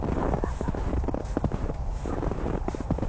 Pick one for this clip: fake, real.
real